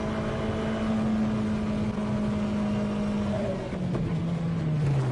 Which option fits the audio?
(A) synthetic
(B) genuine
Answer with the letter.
B